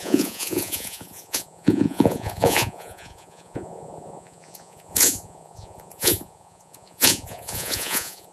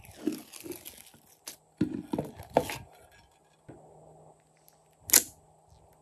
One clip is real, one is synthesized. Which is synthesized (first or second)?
first